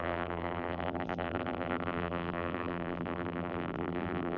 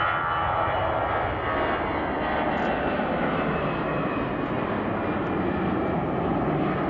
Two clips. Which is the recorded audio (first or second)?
second